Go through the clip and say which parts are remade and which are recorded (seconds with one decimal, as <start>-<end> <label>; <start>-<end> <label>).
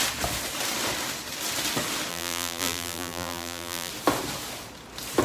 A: 0.0-2.1 recorded; 2.1-3.9 remade; 3.9-5.2 recorded